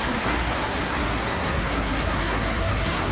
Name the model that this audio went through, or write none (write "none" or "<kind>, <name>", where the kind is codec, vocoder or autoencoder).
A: codec, SNAC